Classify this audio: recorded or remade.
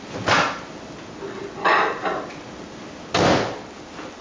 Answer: recorded